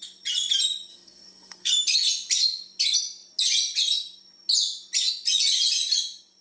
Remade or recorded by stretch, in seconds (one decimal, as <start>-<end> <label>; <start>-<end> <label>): 0.0-0.9 recorded; 0.9-1.7 remade; 1.7-6.4 recorded